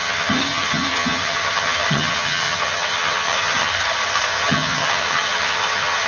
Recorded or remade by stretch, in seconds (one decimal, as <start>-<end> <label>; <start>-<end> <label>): 0.0-3.7 remade; 3.7-4.3 recorded; 4.3-6.1 remade